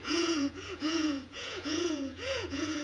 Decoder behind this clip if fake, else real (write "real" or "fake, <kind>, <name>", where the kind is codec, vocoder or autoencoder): fake, vocoder, Vocos